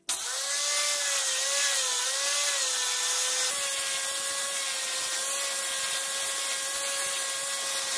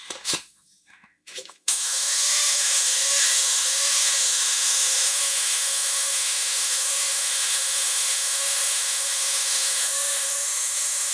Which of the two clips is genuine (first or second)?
first